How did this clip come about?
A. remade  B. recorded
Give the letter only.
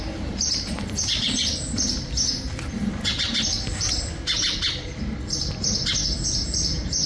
B